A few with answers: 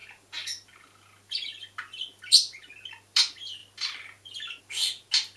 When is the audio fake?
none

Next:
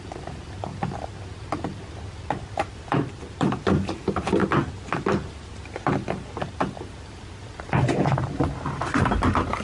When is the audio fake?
0.0-0.7 (vocoder, BigVGAN v2); 1.8-4.4; 5.8-9.6

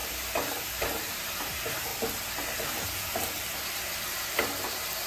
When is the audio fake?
0.0-1.9 (vocoder, BigVGAN v2)

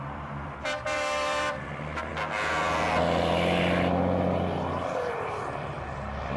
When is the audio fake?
0.0-2.1 (vocoder, BigVGAN v2); 5.1-6.4

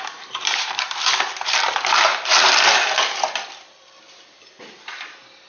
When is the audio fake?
0.0-2.1 (vocoder, BigVGAN v2)

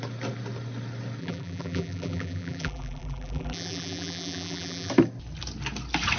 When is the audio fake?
1.2-4.9 (vocoder, BigVGAN v2)

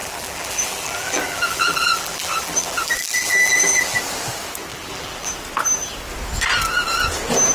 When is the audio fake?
0.0-4.0 (vocoder, BigVGAN v2); 4.7-5.3